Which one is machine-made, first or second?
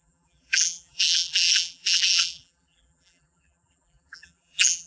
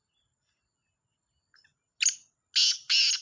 first